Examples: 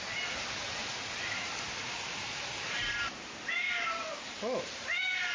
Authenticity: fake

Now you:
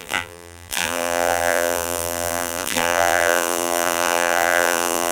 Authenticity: fake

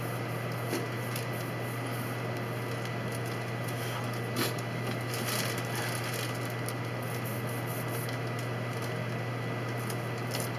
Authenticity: real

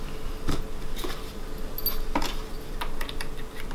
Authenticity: real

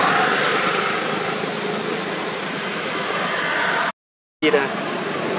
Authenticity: real